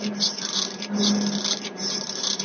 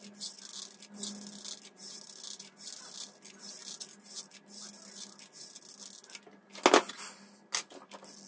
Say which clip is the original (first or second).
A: second